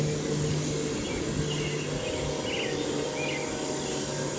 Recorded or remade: recorded